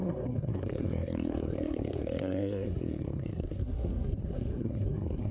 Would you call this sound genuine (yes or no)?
no